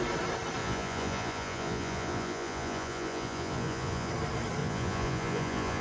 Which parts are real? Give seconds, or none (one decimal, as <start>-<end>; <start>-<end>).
0.0-0.6; 4.1-4.6